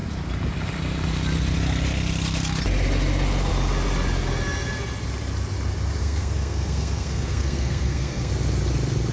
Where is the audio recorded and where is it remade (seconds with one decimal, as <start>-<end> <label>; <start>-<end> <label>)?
0.0-6.0 recorded; 6.0-8.3 remade; 8.3-9.1 recorded